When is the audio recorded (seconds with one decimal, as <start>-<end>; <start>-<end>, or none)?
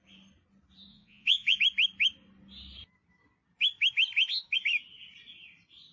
0.0-0.9; 1.6-5.9